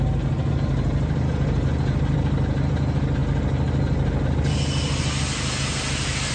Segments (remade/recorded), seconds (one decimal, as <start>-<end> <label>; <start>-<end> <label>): 0.0-6.3 recorded